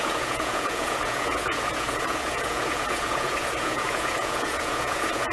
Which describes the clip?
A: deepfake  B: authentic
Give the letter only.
A